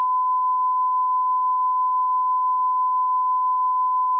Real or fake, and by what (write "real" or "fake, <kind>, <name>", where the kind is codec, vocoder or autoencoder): real